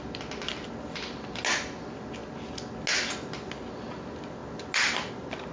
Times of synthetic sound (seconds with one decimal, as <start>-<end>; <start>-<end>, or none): none